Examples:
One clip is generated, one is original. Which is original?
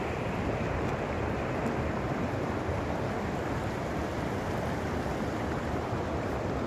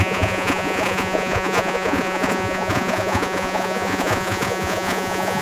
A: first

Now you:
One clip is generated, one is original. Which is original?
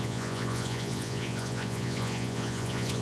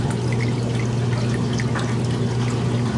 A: second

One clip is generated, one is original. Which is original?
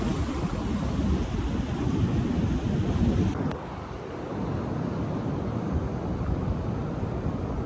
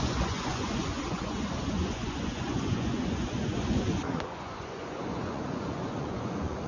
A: first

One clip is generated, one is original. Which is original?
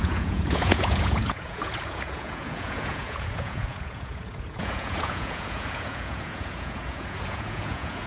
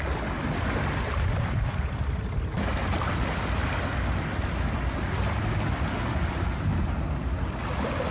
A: second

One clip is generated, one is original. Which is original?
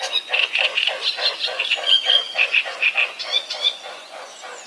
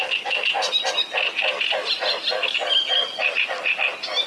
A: second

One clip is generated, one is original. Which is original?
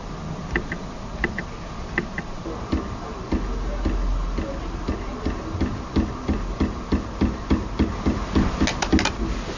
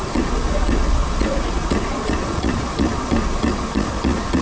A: first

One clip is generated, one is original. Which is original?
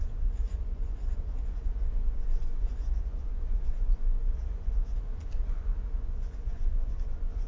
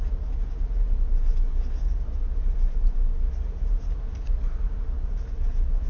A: second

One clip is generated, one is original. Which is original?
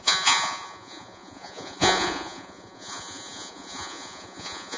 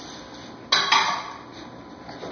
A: second